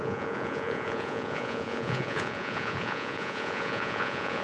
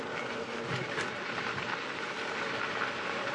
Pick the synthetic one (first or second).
first